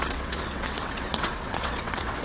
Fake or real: fake